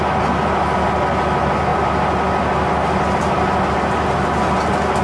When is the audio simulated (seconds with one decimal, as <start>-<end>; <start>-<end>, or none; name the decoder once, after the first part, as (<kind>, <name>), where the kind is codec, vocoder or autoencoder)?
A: none